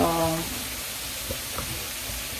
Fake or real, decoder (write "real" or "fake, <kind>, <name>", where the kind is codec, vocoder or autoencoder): real